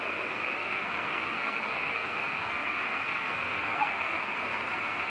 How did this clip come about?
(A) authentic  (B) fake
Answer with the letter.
B